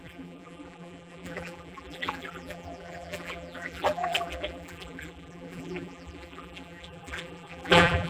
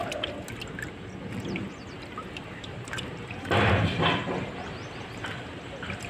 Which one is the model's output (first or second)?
first